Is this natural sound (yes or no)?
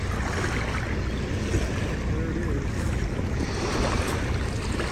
yes